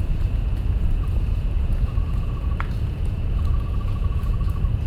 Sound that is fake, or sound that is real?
fake